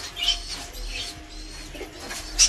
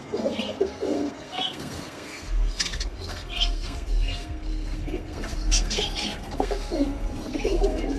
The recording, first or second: first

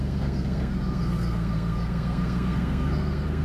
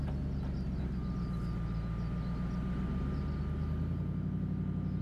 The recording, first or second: second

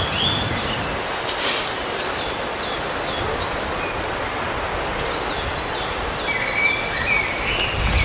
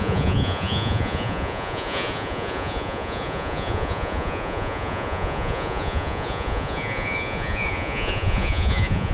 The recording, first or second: first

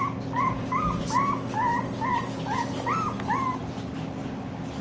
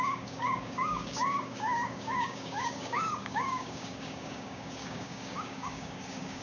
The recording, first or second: first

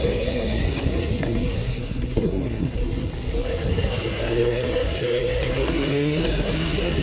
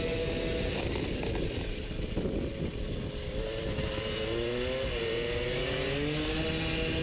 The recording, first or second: second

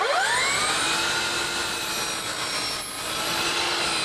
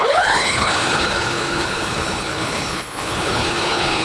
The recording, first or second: first